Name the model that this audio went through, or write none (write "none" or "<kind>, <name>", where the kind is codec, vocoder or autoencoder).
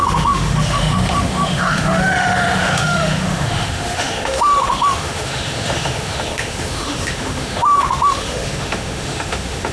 autoencoder, DAC-VAE